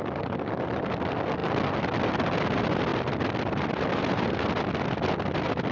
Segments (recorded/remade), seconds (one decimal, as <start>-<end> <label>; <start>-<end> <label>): 0.0-5.7 recorded